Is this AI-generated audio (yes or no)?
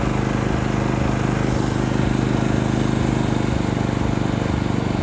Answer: no